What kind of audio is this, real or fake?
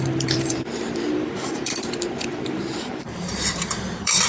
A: fake